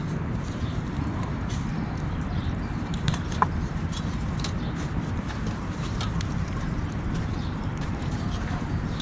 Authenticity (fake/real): fake